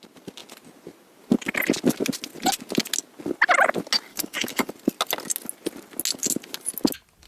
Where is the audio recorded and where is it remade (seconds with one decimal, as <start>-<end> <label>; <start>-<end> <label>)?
0.0-4.1 recorded; 4.1-4.7 remade; 4.7-7.3 recorded

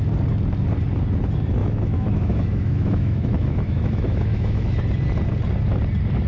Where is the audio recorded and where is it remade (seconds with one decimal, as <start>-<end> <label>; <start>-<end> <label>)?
0.0-1.6 recorded; 1.6-4.8 remade; 4.8-6.3 recorded

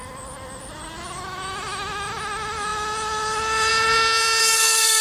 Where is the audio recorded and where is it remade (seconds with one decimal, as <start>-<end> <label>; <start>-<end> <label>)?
0.0-4.4 recorded; 4.4-5.0 remade

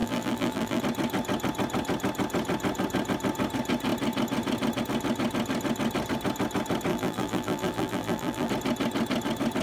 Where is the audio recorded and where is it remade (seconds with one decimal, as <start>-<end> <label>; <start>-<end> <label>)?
0.0-0.8 remade; 0.8-6.9 recorded; 6.9-8.5 remade; 8.5-9.6 recorded

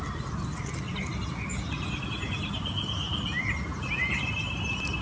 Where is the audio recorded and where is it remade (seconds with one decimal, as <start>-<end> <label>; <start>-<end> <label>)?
0.0-5.0 recorded